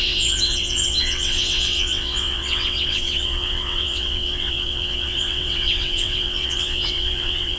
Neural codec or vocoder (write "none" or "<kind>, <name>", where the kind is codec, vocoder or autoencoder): vocoder, WaveNeXt